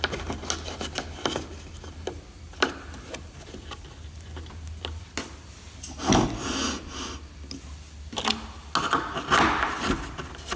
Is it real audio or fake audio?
real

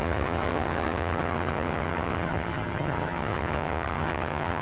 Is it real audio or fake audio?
fake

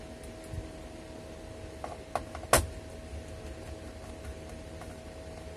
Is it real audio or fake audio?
real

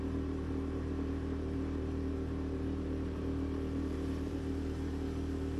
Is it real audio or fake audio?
fake